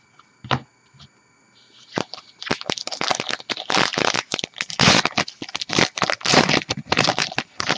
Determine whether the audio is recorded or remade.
recorded